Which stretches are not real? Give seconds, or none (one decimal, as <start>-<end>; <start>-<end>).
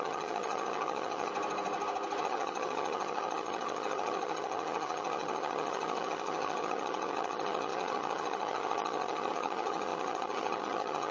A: 0.0-1.3; 2.2-11.1